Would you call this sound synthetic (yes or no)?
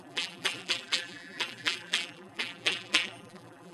yes